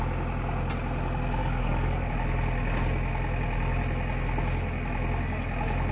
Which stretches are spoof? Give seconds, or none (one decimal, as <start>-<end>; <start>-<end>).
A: 1.4-2.1